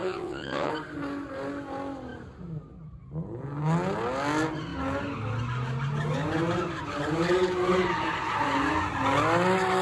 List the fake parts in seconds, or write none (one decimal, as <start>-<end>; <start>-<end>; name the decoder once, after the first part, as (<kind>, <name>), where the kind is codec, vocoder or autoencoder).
0.0-0.7 (vocoder, WaveNeXt)